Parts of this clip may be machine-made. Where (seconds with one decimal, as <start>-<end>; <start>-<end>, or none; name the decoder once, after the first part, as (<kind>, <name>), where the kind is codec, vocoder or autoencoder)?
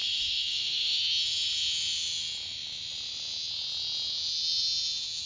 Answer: 0.0-1.0 (autoencoder, DAC-VAE)